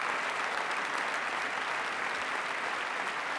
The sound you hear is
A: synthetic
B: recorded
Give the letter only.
B